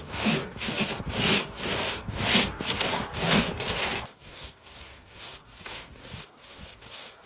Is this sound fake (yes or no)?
yes